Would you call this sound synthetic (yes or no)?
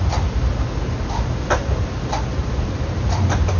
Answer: no